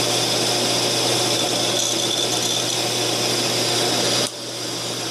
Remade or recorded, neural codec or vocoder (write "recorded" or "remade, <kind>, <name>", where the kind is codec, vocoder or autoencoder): recorded